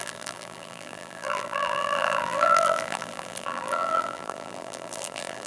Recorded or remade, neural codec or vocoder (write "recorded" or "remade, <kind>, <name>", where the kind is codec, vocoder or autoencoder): remade, vocoder, BigVGAN v2